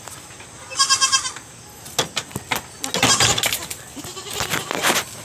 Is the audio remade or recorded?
recorded